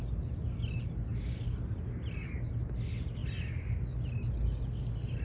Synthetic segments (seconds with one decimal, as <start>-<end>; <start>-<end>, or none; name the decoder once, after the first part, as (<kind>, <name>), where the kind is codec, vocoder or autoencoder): none